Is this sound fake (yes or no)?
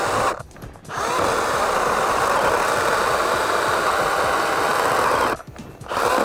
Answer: no